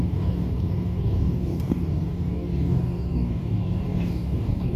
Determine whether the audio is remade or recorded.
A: remade